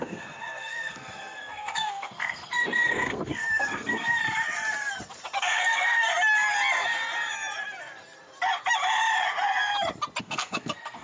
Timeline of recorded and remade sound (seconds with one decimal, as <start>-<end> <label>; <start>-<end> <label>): 0.0-4.2 remade; 4.2-5.4 recorded; 5.4-6.1 remade; 6.1-10.2 recorded; 10.2-11.0 remade